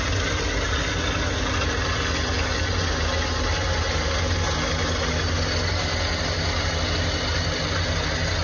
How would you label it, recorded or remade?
recorded